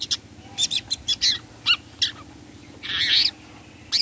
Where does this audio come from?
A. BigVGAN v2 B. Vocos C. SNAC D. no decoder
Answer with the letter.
D